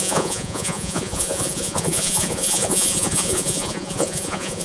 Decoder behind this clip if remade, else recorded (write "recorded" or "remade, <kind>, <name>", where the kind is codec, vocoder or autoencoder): remade, vocoder, Vocos